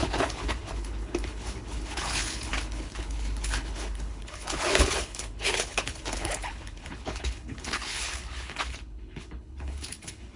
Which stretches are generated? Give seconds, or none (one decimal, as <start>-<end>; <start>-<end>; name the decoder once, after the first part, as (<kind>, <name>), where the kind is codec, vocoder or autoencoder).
0.0-10.4 (codec, HILCodec)